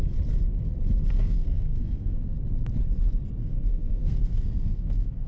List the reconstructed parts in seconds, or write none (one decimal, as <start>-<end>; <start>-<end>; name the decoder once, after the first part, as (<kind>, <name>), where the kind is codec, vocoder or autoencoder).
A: 1.2-2.2 (codec, SNAC); 3.4-5.3